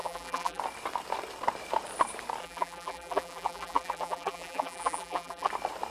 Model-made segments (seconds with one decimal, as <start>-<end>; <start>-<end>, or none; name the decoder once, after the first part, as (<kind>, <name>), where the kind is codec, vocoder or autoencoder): 0.0-0.6 (vocoder, BigVGAN v2); 2.4-5.5